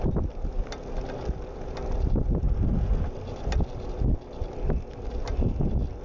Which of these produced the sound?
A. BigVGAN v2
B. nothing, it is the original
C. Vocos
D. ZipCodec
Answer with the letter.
B